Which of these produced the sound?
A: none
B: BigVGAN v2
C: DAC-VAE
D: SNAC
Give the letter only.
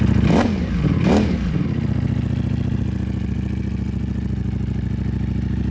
A